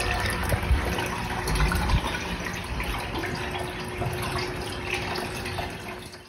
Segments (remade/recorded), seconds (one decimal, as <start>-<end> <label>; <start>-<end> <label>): 0.0-6.3 recorded

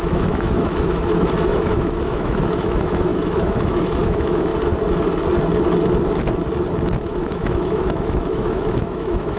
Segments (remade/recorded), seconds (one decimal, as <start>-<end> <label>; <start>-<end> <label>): 0.0-4.5 remade; 4.5-7.0 recorded; 7.0-9.4 remade

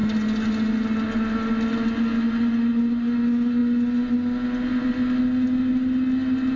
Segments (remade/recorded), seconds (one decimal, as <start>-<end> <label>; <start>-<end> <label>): 0.0-6.6 recorded

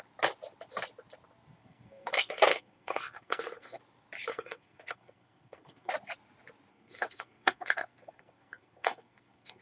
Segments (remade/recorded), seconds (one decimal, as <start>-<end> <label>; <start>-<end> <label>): 0.0-1.6 recorded; 1.6-3.8 remade; 3.8-4.3 recorded; 4.3-5.9 remade; 5.9-6.7 recorded; 6.7-9.6 remade

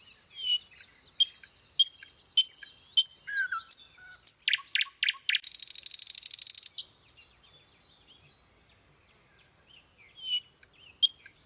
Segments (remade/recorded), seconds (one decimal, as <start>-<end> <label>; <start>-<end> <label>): 0.0-11.5 recorded